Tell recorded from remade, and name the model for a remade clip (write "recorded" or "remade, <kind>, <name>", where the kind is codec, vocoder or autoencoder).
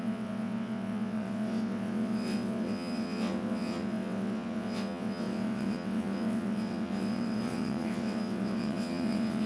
remade, vocoder, WaveNeXt